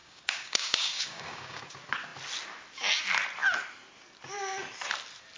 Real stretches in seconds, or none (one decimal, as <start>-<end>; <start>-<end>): 1.6-5.4